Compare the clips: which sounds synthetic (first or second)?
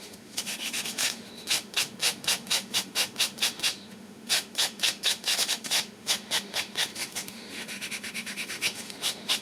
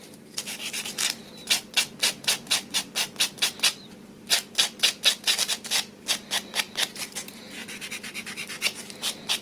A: first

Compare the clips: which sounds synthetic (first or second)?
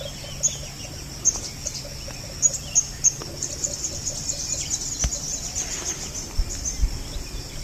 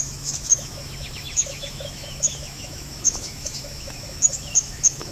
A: second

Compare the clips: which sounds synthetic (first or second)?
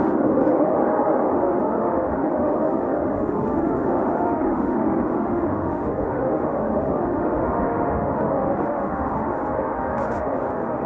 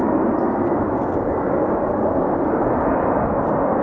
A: first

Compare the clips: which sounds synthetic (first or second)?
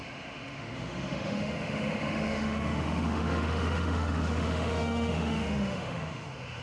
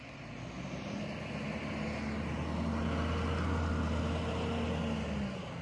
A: first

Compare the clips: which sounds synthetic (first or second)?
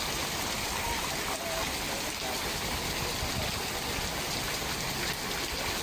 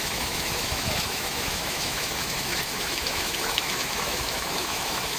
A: second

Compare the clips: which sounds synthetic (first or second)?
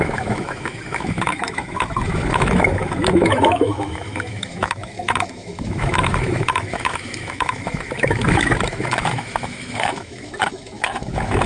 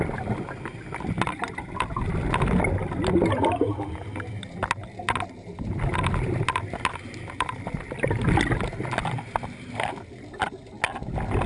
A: first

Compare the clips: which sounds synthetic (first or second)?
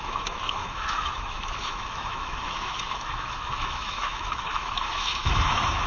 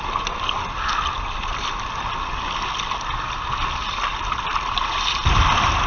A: first